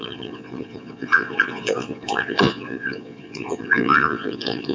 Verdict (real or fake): fake